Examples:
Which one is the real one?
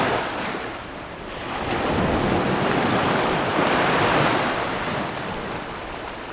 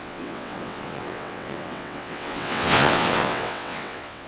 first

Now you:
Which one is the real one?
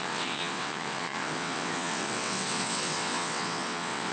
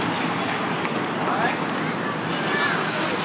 second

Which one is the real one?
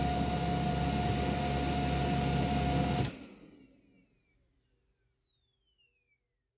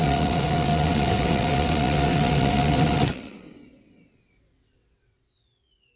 first